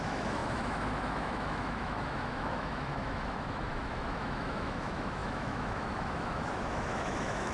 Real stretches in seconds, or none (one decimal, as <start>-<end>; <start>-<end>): none